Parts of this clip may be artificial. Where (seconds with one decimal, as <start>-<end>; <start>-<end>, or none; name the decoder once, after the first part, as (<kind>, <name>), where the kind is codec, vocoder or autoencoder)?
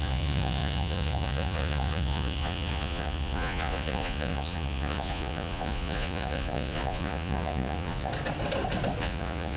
0.0-8.1 (vocoder, Vocos); 9.0-9.6